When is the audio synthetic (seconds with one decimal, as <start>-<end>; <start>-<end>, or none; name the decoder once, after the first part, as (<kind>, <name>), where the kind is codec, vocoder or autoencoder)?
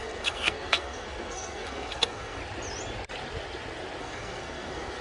0.0-2.4 (codec, SNAC); 4.0-5.0